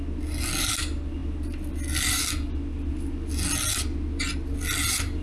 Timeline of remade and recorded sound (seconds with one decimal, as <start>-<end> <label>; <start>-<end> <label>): 0.0-5.2 recorded